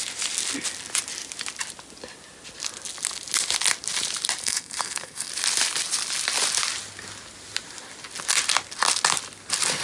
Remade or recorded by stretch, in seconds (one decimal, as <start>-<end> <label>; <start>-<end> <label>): 0.0-4.4 recorded; 4.4-5.3 remade; 5.3-9.8 recorded